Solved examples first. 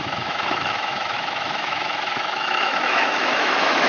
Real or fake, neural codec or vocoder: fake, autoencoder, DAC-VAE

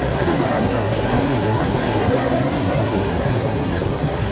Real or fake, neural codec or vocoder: fake, codec, SNAC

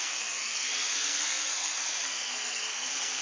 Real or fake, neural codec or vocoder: fake, codec, SNAC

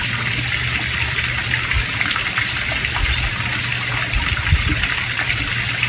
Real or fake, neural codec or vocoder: real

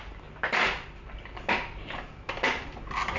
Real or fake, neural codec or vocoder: real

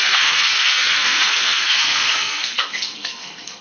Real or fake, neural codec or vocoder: fake, codec, SNAC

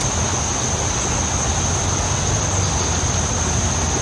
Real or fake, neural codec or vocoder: real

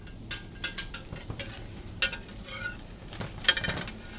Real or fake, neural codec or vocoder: real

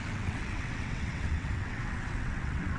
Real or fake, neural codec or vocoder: fake, vocoder, WaveNeXt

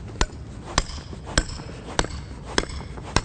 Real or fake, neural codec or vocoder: real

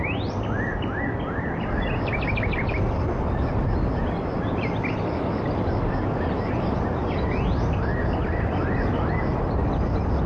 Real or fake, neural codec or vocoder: real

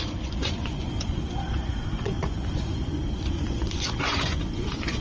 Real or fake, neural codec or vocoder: fake, vocoder, Vocos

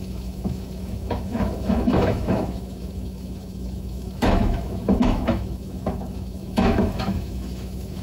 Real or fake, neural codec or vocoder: fake, autoencoder, DAC-VAE